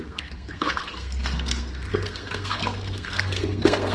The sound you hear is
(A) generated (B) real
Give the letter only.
A